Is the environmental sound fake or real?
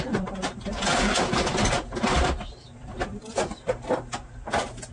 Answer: real